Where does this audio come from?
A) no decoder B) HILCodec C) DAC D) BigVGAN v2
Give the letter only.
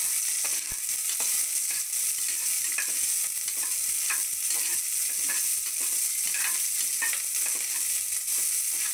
A